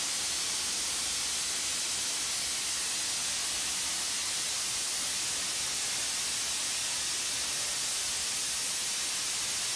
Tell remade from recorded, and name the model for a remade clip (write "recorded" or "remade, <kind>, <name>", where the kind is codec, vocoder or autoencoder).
recorded